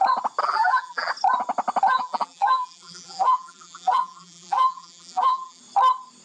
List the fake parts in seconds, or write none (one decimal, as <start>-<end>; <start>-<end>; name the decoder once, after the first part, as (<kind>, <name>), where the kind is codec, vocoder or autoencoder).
0.4-1.1 (vocoder, BigVGAN v2); 1.9-5.6